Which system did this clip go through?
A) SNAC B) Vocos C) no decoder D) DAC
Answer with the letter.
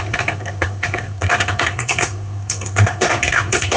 A